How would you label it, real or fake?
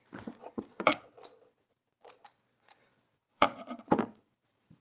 fake